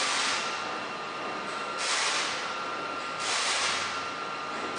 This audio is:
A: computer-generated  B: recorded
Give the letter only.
B